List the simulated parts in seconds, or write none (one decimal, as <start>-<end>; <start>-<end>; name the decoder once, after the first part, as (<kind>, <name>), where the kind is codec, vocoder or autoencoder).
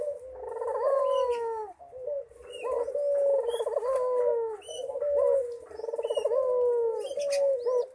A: none